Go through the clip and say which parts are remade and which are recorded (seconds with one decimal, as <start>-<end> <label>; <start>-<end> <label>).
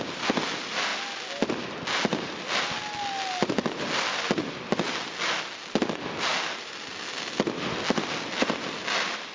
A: 0.0-9.3 recorded